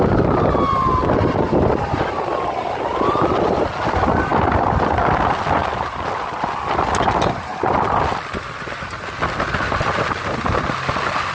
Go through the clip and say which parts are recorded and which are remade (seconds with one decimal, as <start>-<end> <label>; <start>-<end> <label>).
0.0-11.3 recorded